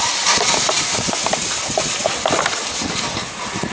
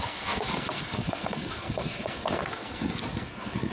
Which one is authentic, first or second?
first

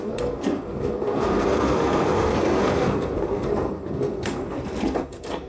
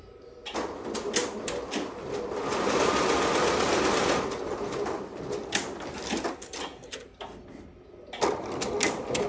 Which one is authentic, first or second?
second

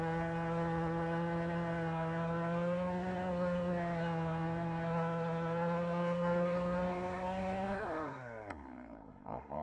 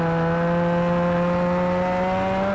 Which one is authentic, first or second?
second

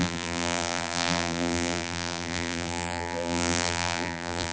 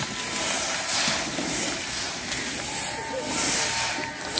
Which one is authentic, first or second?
second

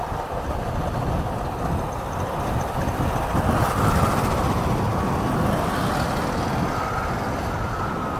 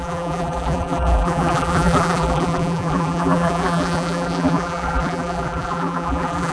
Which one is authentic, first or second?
first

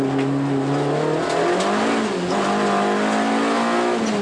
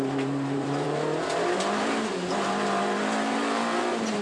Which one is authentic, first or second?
first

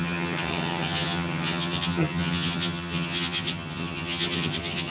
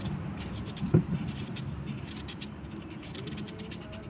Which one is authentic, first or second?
second